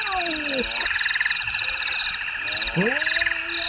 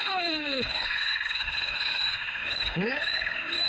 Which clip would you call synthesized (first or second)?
second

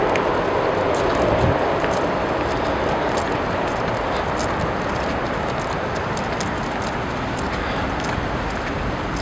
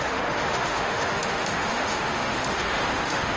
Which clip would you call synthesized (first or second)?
second